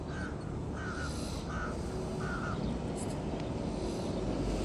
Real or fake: real